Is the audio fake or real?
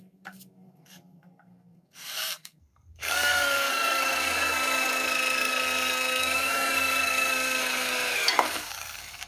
fake